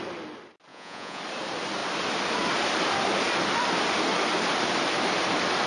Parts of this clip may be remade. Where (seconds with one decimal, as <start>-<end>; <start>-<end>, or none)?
0.7-1.2

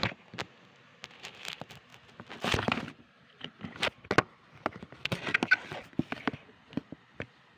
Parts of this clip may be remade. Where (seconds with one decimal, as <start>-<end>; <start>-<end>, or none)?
none

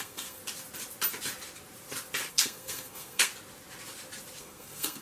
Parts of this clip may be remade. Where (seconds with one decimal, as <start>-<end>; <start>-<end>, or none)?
0.0-0.4; 2.3-3.3; 4.4-5.0

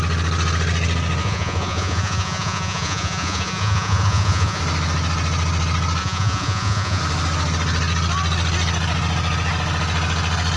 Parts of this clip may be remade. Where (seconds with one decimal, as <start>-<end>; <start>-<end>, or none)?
1.2-4.6; 6.0-7.0